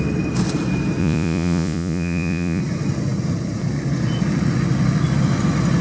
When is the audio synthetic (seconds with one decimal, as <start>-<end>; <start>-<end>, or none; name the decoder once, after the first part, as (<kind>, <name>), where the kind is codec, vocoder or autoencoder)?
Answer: 1.0-2.6 (vocoder, Vocos)